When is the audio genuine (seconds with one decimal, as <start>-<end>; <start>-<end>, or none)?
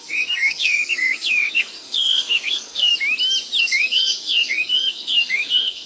2.9-3.6